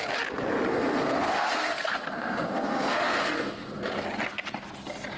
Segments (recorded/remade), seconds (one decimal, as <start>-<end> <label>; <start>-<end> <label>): 0.0-0.7 recorded; 0.7-3.8 remade; 3.8-5.2 recorded